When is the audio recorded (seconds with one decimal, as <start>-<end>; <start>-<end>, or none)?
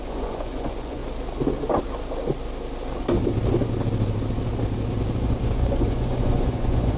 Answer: 1.0-5.2